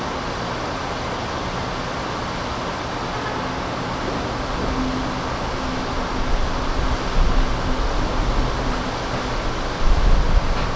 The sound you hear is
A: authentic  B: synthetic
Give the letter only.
A